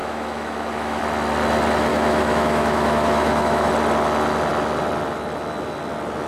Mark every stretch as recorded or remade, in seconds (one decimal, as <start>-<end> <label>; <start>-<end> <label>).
0.0-1.0 remade; 1.0-1.9 recorded; 1.9-3.7 remade; 3.7-6.3 recorded